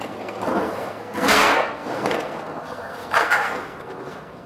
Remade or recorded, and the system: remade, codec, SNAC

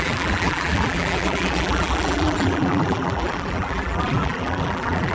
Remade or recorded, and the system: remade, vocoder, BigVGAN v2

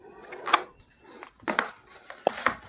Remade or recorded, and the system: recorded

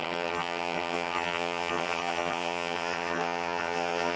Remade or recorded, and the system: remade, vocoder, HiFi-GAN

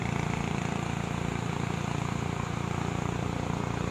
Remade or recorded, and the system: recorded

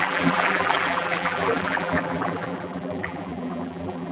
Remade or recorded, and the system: remade, vocoder, BigVGAN v2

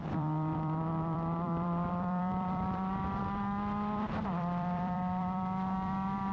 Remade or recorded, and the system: remade, vocoder, BigVGAN v2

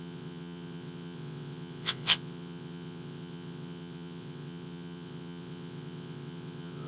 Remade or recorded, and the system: remade, vocoder, WaveNeXt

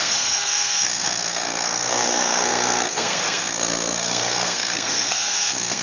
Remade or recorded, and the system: remade, codec, SNAC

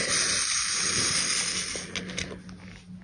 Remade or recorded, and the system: recorded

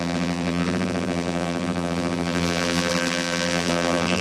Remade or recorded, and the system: remade, vocoder, BigVGAN v2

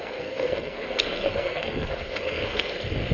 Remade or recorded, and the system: remade, codec, SNAC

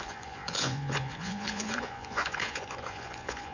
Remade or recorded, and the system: remade, vocoder, Vocos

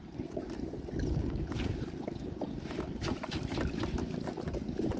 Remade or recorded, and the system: recorded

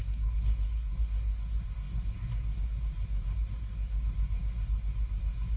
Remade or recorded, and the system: remade, codec, SNAC